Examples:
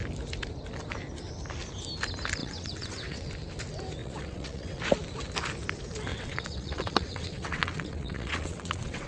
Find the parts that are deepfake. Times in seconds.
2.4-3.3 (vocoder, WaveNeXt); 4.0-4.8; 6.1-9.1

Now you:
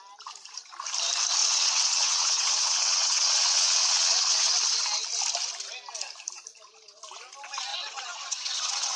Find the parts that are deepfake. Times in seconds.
1.4-4.6 (vocoder, WaveNeXt); 7.7-9.0

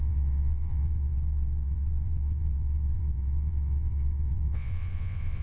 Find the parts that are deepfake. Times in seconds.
0.0-5.4 (vocoder, WaveNeXt)

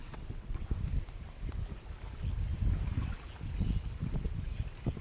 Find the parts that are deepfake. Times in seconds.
0.0-0.7 (vocoder, WaveNeXt)

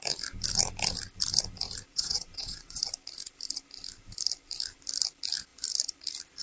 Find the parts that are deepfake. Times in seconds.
1.9-2.8 (vocoder, WaveNeXt)

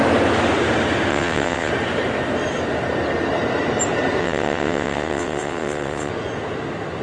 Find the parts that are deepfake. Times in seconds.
1.1-1.7 (vocoder, WaveNeXt); 4.2-6.1

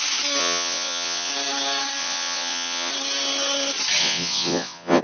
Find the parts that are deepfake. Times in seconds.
0.4-1.3 (vocoder, WaveNeXt); 2.0-2.9; 4.0-5.0

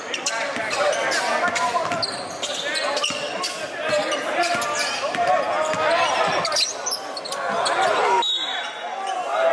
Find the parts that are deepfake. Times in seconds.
none